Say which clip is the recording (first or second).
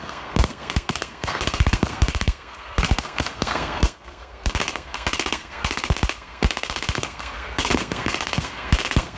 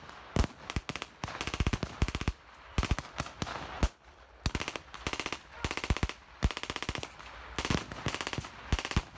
second